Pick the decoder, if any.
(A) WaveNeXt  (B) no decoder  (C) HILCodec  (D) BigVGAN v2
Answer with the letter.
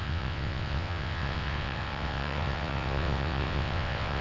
A